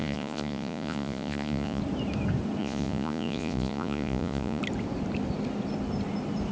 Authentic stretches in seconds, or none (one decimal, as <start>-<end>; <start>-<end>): 1.8-2.6; 4.6-6.5

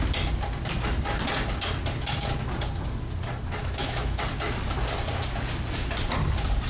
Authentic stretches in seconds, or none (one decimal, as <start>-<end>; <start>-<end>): 0.0-3.6; 4.2-6.7

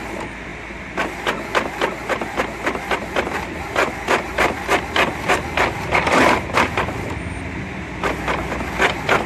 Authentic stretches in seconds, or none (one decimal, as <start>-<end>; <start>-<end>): 0.0-9.3

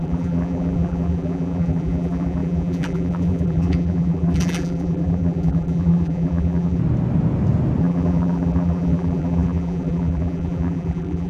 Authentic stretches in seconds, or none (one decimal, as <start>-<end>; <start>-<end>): 6.8-7.8